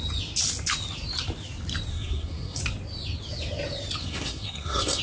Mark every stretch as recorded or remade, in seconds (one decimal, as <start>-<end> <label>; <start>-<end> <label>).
0.0-1.9 recorded; 1.9-2.6 remade; 2.6-4.0 recorded; 4.0-5.0 remade